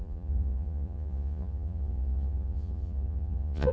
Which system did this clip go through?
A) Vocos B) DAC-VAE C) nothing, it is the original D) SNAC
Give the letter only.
A